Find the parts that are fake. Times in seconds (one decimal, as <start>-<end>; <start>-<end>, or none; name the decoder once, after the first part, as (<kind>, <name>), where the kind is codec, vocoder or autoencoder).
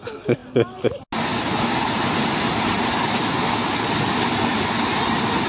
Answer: none